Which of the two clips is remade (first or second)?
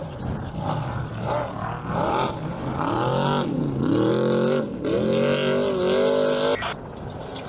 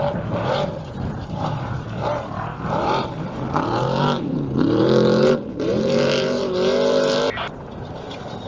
second